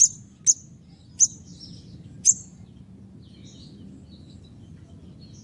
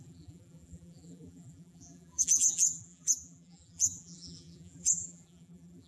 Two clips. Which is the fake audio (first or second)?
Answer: second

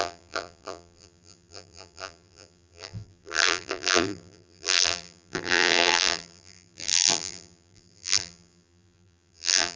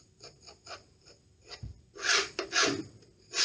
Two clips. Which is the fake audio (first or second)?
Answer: first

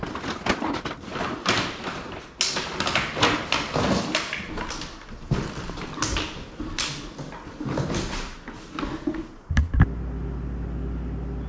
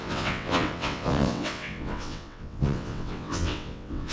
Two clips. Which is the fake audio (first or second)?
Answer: second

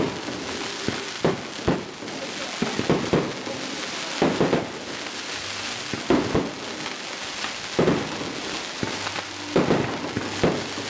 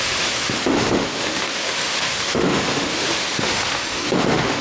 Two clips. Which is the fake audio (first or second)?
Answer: second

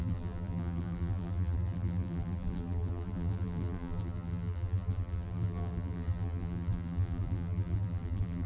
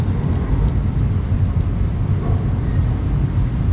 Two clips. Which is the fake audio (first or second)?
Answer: first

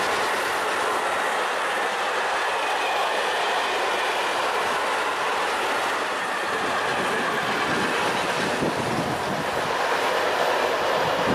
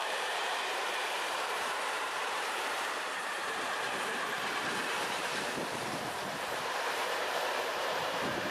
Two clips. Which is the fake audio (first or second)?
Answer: second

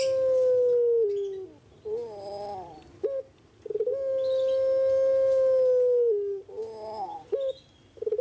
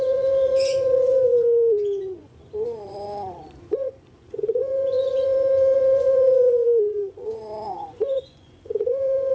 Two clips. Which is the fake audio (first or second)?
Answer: second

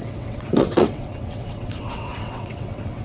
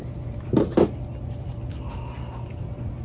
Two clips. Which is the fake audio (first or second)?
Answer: first